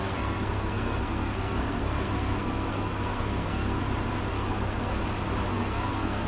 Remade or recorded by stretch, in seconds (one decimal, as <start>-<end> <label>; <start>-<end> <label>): 0.0-3.8 remade; 3.8-4.3 recorded; 4.3-5.0 remade; 5.0-5.5 recorded; 5.5-6.3 remade